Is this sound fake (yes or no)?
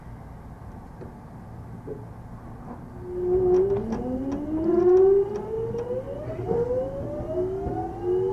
no